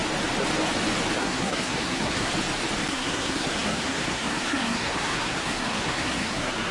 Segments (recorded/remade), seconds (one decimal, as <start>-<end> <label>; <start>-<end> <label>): 0.0-1.2 recorded; 1.2-2.3 remade; 2.3-2.9 recorded; 2.9-6.7 remade